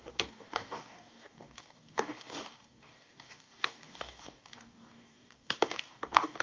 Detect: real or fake fake